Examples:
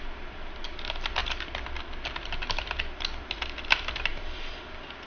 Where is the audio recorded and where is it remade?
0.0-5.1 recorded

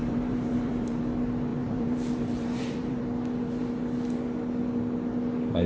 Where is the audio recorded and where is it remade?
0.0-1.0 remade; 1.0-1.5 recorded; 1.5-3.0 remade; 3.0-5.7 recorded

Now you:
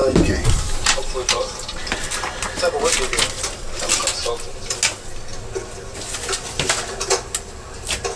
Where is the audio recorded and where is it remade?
0.0-2.1 remade; 2.1-8.2 recorded

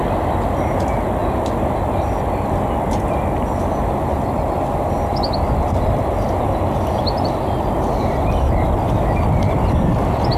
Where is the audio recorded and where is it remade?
0.0-10.4 recorded

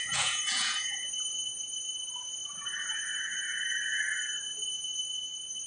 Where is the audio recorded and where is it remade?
0.0-5.7 remade

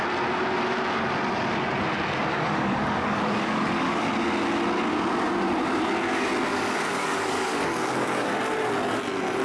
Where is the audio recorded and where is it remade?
0.0-2.3 recorded; 2.3-4.1 remade; 4.1-6.5 recorded; 6.5-8.3 remade; 8.3-9.4 recorded

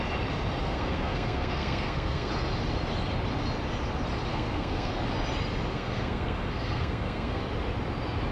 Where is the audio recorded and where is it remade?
0.0-0.6 recorded; 0.6-2.3 remade; 2.3-4.3 recorded; 4.3-4.9 remade; 4.9-5.7 recorded; 5.7-7.4 remade; 7.4-8.3 recorded

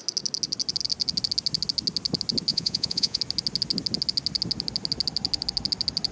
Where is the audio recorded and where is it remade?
0.0-2.5 recorded; 2.5-3.2 remade; 3.2-6.1 recorded